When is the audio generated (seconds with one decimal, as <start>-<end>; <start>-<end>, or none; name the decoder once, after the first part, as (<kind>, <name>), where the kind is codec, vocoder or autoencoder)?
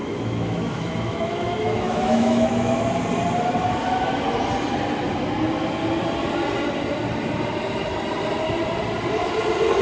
0.0-2.9 (autoencoder, DAC-VAE)